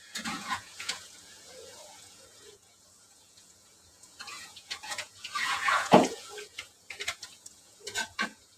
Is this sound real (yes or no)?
no